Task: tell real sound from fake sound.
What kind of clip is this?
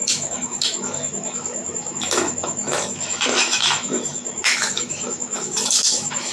fake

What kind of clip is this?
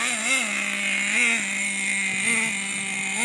real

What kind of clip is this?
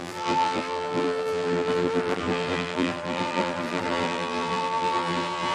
fake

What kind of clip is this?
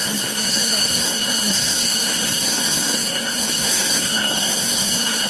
fake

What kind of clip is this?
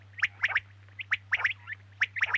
real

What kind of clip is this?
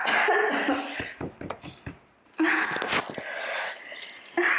real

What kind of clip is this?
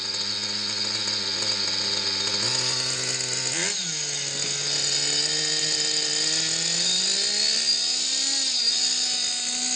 real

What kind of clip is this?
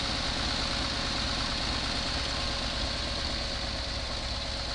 real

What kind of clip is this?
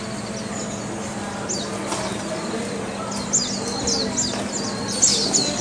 real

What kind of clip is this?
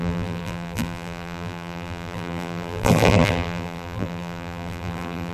fake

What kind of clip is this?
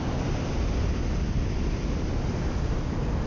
real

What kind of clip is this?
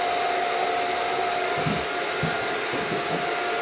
real